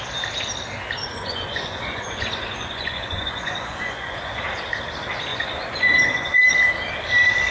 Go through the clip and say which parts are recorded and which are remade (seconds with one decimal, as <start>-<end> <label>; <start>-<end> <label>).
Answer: 0.0-1.0 recorded; 1.0-4.4 remade; 4.4-5.3 recorded; 5.3-6.4 remade; 6.4-7.5 recorded